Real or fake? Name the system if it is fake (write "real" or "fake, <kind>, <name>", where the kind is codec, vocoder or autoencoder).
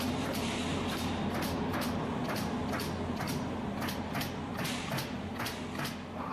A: real